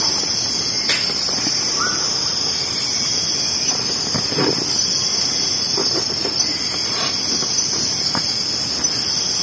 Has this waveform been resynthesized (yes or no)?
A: no